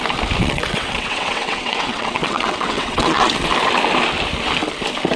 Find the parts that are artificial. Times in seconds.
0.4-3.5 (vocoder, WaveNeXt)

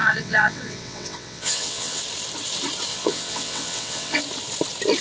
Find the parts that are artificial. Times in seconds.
0.0-2.0 (vocoder, WaveNeXt); 2.9-4.2